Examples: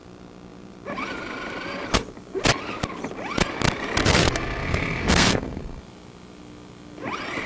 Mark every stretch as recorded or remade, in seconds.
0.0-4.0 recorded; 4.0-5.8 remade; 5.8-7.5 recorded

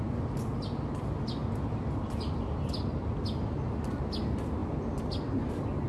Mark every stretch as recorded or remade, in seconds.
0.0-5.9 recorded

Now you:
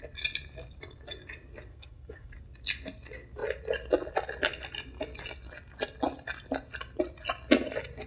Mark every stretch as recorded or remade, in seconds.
0.0-1.7 recorded; 1.7-2.3 remade; 2.3-8.1 recorded

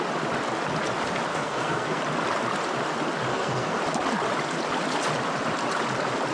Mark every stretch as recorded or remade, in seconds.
0.0-1.3 recorded; 1.3-2.0 remade; 2.0-3.3 recorded; 3.3-3.8 remade; 3.8-6.3 recorded

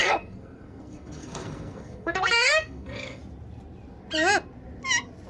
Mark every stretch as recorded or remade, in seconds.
0.0-3.2 remade; 3.2-5.3 recorded

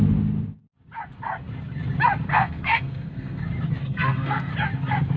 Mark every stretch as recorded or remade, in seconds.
0.0-2.3 recorded; 2.3-3.4 remade; 3.4-3.8 recorded; 3.8-4.5 remade; 4.5-5.2 recorded

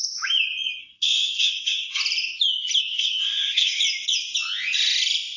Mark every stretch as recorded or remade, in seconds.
0.0-0.8 recorded; 0.8-2.0 remade; 2.0-2.8 recorded; 2.8-3.8 remade; 3.8-5.4 recorded